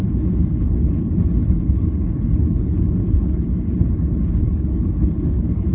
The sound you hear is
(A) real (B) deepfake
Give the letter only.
B